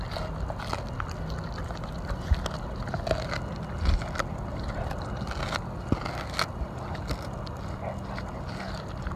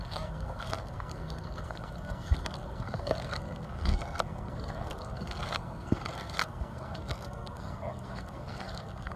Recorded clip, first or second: first